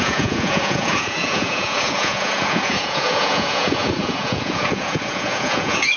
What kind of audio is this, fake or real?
fake